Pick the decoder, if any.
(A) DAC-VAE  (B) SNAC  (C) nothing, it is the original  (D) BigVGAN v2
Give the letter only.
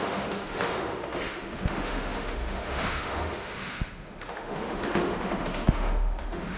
A